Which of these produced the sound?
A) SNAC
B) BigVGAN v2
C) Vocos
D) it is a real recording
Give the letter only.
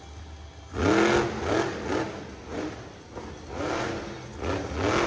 D